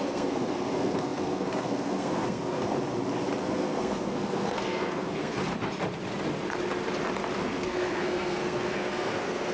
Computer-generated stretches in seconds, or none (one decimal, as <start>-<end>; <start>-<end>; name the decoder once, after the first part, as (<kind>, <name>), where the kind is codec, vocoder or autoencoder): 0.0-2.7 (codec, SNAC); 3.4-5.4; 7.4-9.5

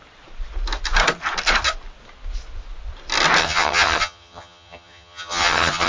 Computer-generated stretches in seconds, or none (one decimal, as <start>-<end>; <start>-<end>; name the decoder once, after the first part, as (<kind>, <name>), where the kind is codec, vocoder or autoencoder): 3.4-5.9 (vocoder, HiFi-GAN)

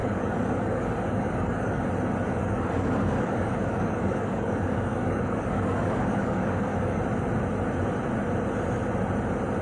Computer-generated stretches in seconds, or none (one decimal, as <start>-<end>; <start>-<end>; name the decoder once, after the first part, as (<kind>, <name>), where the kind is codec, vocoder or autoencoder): 0.0-1.8 (codec, DAC); 2.3-7.0

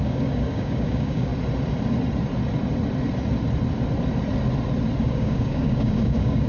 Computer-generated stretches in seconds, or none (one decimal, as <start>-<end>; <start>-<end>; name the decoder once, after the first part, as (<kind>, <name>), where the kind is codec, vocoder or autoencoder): 0.0-1.3 (codec, DAC); 5.0-6.5

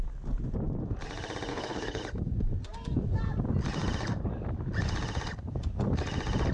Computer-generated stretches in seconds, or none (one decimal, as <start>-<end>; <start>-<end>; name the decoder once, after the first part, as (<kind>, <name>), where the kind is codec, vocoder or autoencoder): 1.5-2.0 (codec, HILCodec)

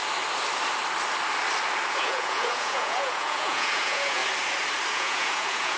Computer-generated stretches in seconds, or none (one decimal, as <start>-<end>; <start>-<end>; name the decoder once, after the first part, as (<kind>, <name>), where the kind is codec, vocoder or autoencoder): 1.9-4.2 (vocoder, Vocos); 4.9-5.8

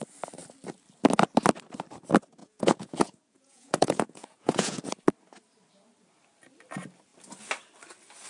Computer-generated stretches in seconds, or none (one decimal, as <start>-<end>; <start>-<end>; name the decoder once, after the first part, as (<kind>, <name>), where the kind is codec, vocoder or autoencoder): 2.4-4.8 (vocoder, Vocos)

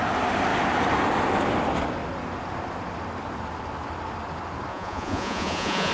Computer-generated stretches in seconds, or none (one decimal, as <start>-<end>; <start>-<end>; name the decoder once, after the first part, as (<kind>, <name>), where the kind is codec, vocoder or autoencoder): 4.7-5.9 (vocoder, Vocos)